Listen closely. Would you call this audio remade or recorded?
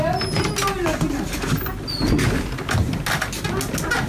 recorded